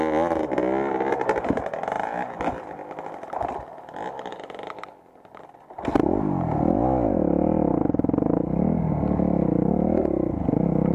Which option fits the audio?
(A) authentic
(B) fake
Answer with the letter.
A